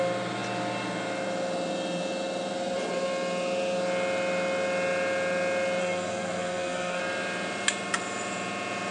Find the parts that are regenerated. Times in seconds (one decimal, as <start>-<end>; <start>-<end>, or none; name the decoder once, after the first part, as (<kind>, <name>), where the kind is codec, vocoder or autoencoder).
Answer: 5.8-7.0 (codec, SNAC)